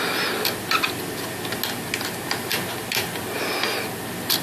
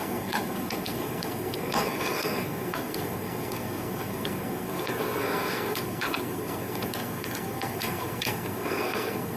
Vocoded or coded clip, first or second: second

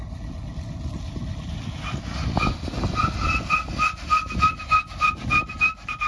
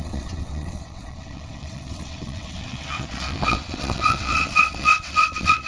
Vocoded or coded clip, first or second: second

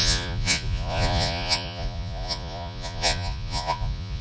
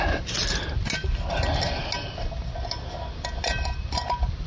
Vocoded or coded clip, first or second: first